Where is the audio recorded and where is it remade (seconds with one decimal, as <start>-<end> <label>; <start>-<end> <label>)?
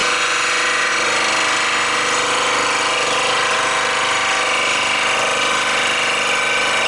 0.0-0.9 remade; 0.9-6.9 recorded